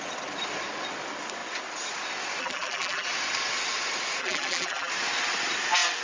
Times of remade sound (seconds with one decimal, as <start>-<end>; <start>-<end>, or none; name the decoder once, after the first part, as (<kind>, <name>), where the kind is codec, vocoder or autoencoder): 2.4-3.1 (vocoder, BigVGAN v2); 4.2-4.9